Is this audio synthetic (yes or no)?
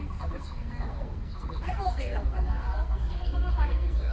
yes